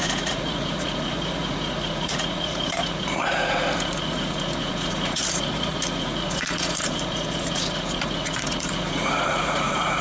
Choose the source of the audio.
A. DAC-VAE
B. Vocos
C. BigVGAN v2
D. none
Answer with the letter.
B